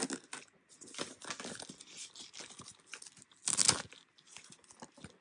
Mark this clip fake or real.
real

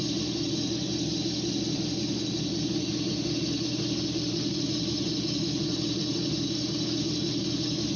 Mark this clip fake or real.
real